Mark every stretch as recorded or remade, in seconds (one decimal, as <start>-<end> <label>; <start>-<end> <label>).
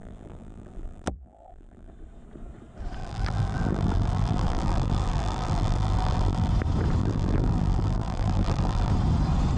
0.0-1.9 remade; 1.9-3.0 recorded; 3.0-6.5 remade; 6.5-7.0 recorded; 7.0-8.9 remade; 8.9-9.6 recorded